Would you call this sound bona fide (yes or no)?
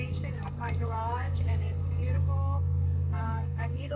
no